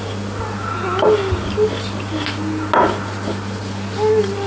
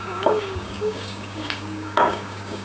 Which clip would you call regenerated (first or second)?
second